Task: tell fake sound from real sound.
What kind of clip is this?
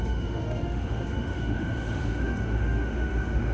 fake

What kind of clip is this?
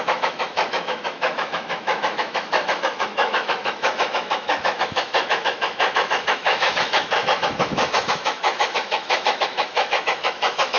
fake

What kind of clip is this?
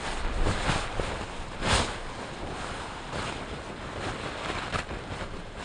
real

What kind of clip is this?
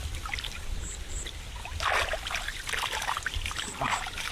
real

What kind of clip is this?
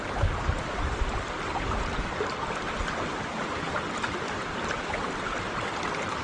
real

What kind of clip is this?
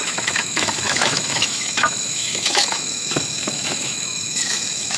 fake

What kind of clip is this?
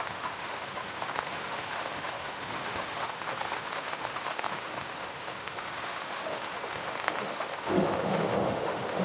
fake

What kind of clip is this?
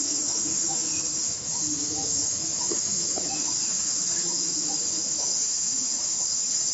fake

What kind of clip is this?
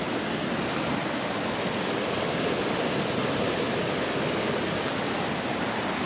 real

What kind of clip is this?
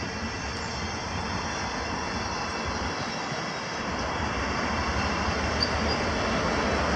real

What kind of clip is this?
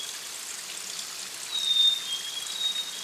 real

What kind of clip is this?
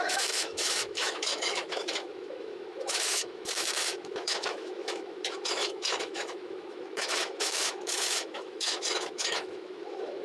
fake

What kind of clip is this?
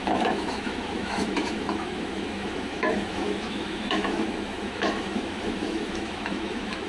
fake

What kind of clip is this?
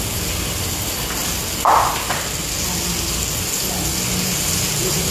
real